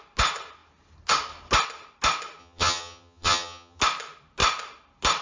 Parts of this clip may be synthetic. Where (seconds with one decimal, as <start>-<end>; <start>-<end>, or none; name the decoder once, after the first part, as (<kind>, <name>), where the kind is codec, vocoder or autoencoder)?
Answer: 2.4-3.8 (vocoder, HiFi-GAN)